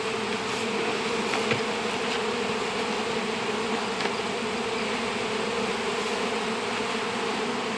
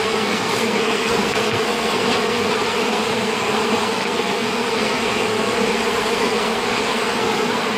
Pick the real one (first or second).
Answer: first